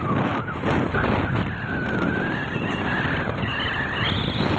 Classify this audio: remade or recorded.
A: recorded